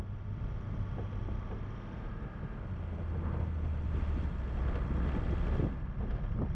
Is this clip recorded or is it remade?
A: recorded